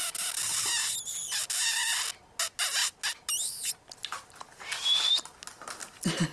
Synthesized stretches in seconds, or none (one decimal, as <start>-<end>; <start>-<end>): none

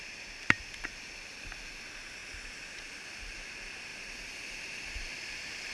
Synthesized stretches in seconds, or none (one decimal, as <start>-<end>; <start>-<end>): none

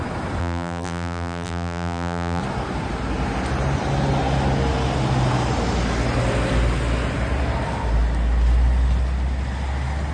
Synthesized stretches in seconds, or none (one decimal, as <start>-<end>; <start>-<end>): 0.4-2.4

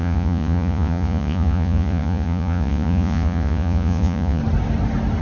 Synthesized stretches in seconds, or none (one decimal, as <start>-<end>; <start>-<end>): 0.0-4.4

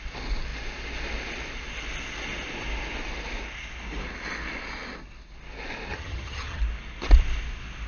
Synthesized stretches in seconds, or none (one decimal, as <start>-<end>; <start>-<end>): 5.9-6.6

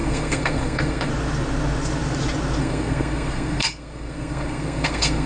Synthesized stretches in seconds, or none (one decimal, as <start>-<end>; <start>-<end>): 0.0-1.1; 2.6-5.3